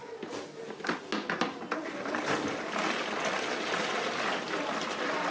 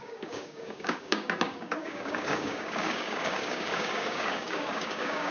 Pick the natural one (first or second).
first